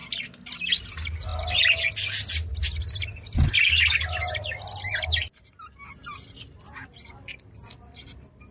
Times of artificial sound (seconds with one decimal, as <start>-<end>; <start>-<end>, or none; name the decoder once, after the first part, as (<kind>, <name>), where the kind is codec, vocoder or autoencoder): none